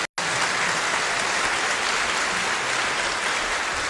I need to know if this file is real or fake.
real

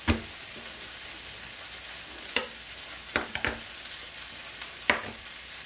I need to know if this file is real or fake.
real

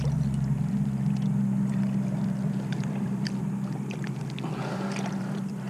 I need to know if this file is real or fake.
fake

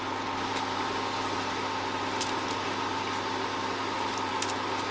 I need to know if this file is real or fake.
real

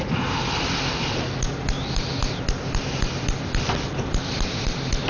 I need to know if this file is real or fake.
real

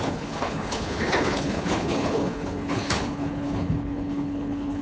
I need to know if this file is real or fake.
fake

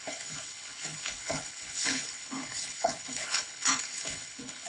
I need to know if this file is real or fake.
fake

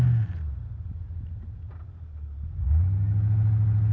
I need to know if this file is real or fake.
real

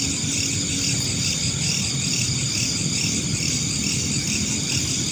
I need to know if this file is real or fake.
real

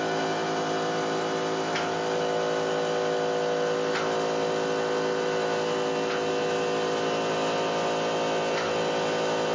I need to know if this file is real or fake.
real